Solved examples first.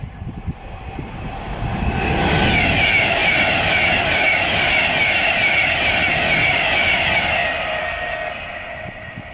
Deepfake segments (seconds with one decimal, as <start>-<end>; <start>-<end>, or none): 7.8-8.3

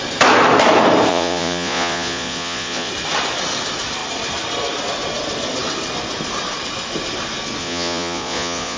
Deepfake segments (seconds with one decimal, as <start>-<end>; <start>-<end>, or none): 1.1-2.9; 7.6-8.8

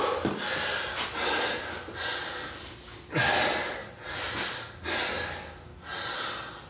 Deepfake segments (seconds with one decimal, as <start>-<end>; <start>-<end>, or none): none

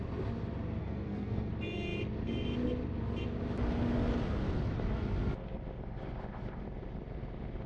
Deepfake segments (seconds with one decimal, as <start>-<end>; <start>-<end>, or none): 0.8-1.5

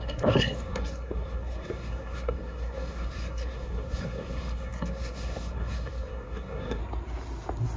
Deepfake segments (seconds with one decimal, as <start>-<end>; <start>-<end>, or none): 0.0-6.8

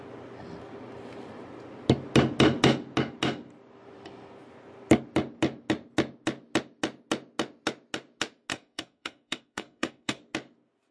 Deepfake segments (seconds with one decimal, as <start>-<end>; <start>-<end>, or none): 8.5-10.2

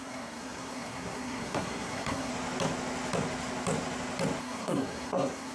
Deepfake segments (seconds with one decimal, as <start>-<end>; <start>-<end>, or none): 0.0-2.3; 4.4-5.5